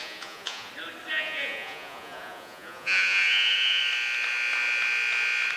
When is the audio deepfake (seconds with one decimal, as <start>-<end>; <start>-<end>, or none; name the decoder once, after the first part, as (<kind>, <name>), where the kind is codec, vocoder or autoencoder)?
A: 0.0-0.7 (vocoder, Vocos); 1.1-3.8